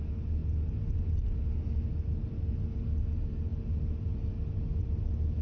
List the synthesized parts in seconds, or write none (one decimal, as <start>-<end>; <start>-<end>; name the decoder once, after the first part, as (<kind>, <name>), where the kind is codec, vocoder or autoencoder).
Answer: none